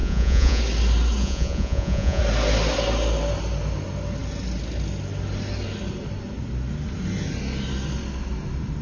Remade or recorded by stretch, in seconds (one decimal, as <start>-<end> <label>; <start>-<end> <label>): 0.0-0.6 remade; 0.6-1.2 recorded; 1.2-2.2 remade; 2.2-8.8 recorded